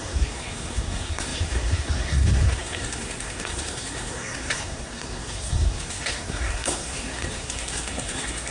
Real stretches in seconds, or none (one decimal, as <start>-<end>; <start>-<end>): none